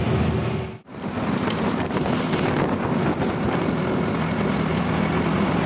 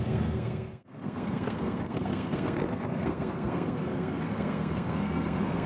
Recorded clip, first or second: first